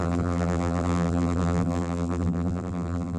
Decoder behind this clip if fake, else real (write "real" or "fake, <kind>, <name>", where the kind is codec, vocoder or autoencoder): fake, vocoder, BigVGAN v2